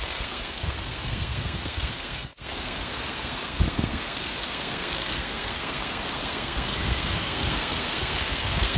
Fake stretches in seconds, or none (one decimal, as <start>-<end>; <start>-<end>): 0.0-8.8